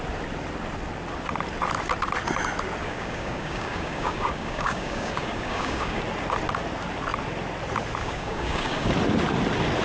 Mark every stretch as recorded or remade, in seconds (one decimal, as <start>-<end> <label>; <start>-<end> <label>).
0.0-2.8 recorded; 2.8-6.0 remade; 6.0-8.0 recorded; 8.0-8.9 remade; 8.9-9.8 recorded